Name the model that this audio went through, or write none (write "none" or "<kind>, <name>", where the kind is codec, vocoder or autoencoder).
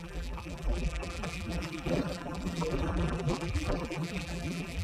vocoder, BigVGAN v2